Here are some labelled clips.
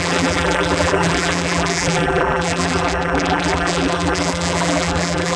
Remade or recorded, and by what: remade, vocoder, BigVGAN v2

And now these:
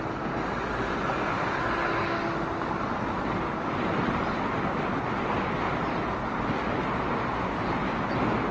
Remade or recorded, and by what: recorded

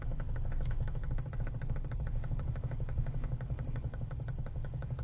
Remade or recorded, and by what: remade, codec, DAC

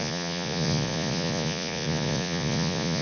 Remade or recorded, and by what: remade, vocoder, Vocos